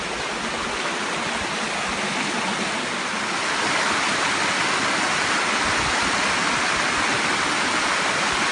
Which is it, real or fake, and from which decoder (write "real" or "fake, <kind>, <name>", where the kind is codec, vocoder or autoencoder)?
real